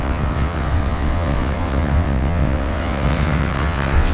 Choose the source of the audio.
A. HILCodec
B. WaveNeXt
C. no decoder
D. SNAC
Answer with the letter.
B